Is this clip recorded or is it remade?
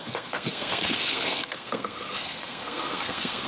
remade